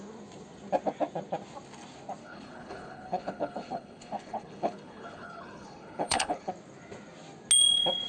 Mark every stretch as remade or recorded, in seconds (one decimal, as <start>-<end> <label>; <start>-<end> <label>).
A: 0.0-2.2 recorded; 2.2-6.5 remade; 6.5-8.1 recorded